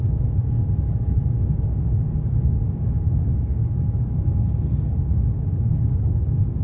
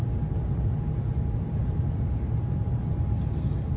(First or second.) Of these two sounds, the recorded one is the second